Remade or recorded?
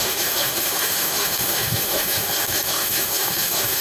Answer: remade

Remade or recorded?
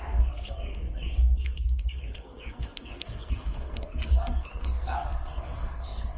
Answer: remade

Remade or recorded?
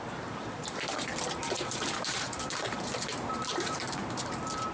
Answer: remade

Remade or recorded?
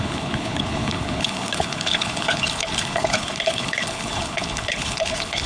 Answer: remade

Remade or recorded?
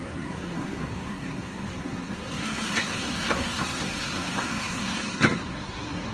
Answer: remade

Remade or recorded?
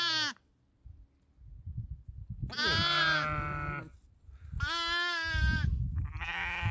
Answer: recorded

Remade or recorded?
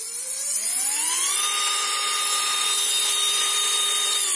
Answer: remade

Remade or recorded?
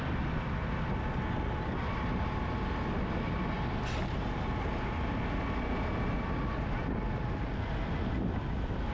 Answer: recorded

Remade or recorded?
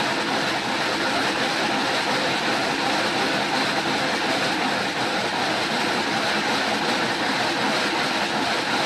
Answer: recorded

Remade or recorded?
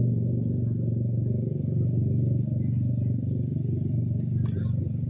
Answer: recorded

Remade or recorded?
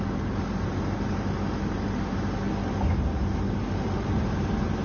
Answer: recorded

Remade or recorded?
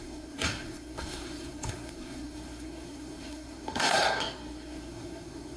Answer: remade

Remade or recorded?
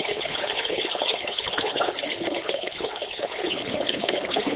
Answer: remade